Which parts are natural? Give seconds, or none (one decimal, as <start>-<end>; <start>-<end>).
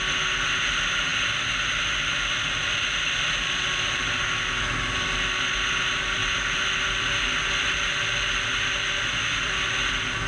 0.0-10.3